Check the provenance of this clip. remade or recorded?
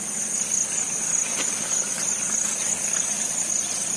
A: recorded